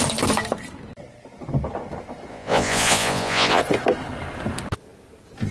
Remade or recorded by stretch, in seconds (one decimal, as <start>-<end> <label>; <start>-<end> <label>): 0.0-2.3 recorded; 2.3-3.6 remade; 3.6-5.5 recorded